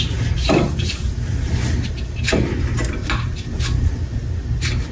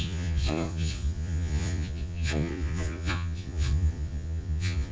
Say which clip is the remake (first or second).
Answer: second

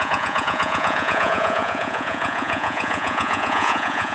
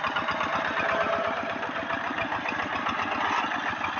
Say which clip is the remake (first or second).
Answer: first